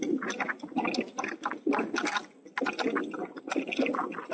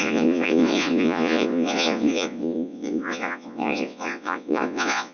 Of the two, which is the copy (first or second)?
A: second